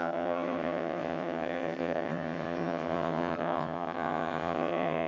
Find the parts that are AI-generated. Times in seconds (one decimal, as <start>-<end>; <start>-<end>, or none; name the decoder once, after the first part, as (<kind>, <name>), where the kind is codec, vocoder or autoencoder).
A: 0.0-5.1 (vocoder, HiFi-GAN)